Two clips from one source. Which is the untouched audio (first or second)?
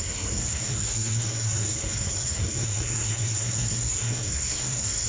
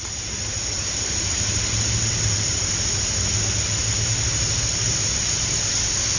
second